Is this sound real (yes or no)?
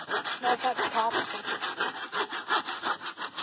no